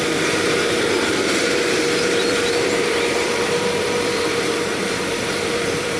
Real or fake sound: fake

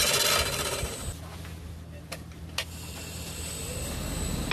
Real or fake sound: real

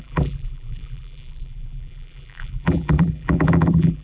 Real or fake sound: fake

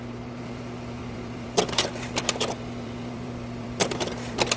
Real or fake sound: fake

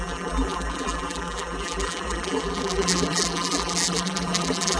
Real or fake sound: fake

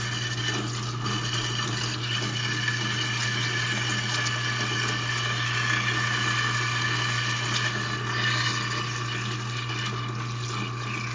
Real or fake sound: real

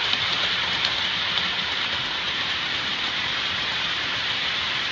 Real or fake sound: fake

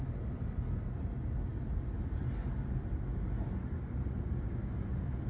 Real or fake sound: real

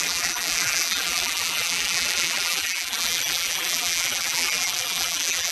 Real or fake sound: fake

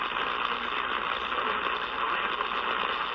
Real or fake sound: real